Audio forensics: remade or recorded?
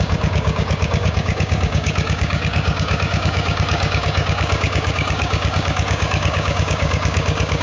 remade